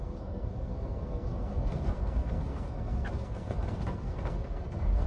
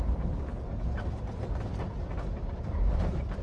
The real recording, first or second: second